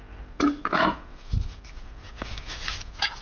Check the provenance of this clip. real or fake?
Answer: real